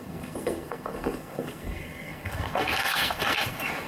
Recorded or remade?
remade